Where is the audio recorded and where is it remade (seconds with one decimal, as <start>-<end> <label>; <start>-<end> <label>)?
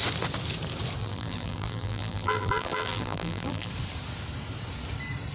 0.0-1.0 recorded; 1.0-3.7 remade; 3.7-5.3 recorded